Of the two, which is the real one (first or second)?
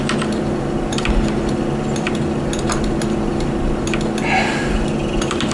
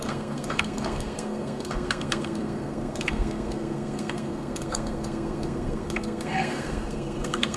first